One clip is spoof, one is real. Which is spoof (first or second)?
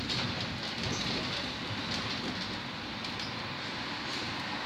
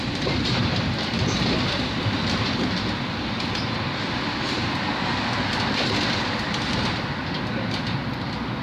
second